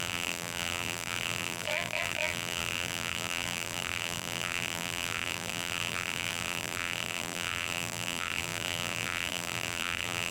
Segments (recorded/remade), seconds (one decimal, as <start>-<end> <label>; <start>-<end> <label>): 0.0-10.3 remade